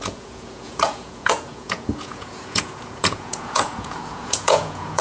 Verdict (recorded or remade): remade